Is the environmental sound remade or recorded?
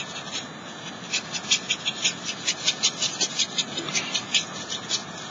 recorded